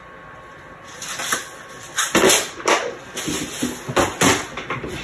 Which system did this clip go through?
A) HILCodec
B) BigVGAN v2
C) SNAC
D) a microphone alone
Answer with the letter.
D